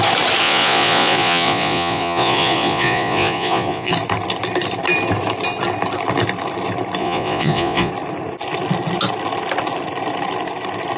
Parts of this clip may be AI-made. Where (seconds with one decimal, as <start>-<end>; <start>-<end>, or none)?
0.4-3.9; 7.0-7.9